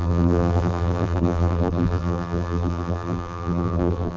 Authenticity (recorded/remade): remade